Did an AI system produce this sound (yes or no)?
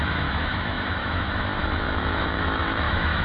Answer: yes